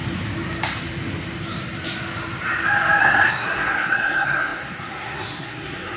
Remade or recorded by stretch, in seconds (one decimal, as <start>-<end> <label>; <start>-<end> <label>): 0.0-3.0 recorded; 3.0-6.0 remade